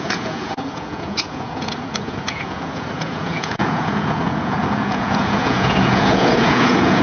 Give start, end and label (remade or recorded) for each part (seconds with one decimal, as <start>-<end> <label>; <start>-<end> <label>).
0.0-7.0 remade